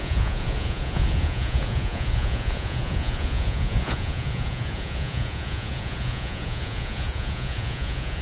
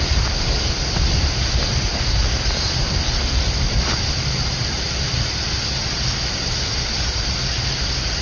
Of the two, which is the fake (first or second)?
first